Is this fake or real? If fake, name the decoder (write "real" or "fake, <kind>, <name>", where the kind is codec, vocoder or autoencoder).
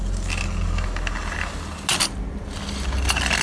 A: real